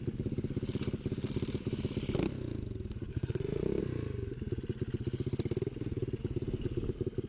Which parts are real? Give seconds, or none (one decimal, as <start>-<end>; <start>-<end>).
0.0-3.1; 3.8-7.3